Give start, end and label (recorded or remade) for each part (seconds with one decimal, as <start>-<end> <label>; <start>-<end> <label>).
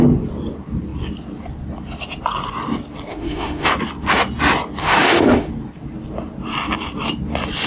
0.0-3.1 recorded; 3.1-3.7 remade; 3.7-4.8 recorded; 4.8-5.5 remade; 5.5-7.7 recorded